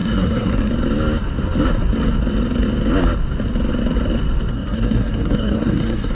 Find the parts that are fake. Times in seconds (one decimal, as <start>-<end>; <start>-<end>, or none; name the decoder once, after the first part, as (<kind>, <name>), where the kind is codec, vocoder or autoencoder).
0.0-0.7 (codec, SNAC); 4.5-6.1